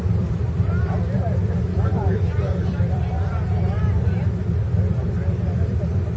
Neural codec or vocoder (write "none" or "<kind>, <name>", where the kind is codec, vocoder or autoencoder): vocoder, BigVGAN v2